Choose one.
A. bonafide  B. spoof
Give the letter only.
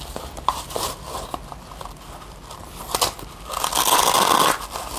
A